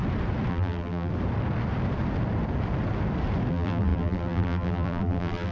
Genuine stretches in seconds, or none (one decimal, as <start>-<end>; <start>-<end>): 0.0-0.5; 1.1-3.5